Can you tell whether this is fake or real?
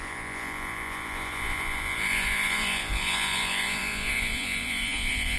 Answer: fake